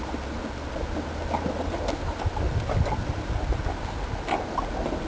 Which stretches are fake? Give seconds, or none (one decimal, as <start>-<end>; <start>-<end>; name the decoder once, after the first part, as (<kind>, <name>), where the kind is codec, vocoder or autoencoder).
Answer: none